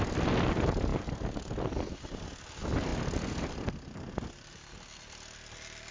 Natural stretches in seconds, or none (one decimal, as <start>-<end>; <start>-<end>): 0.0-5.9